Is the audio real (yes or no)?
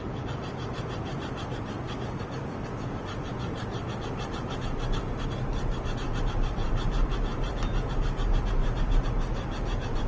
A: yes